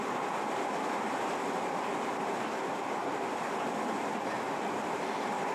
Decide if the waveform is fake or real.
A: real